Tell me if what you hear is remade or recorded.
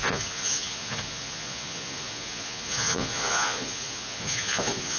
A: remade